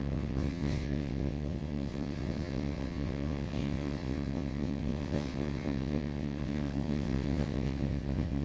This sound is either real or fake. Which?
fake